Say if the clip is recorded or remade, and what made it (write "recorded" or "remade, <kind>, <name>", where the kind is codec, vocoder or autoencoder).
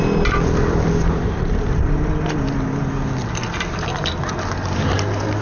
recorded